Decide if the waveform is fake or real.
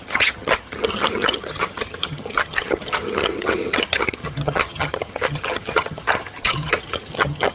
fake